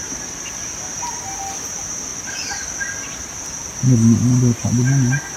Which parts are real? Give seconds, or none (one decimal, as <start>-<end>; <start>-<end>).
0.8-5.4